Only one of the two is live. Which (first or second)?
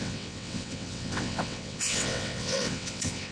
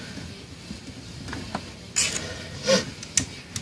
second